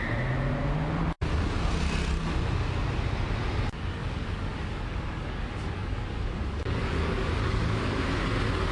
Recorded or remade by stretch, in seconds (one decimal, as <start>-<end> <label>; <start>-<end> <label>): 0.0-4.0 recorded; 4.0-8.0 remade; 8.0-8.7 recorded